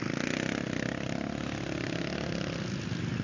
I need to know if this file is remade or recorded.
recorded